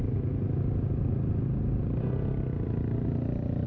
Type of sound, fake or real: real